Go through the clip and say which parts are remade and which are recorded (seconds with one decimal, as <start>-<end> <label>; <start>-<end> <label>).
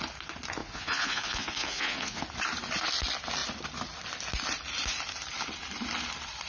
0.0-0.6 recorded; 0.6-2.2 remade; 2.2-6.5 recorded